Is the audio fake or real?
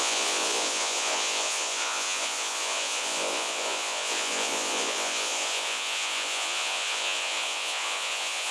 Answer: fake